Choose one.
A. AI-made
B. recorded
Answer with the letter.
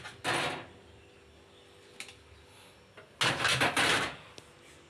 B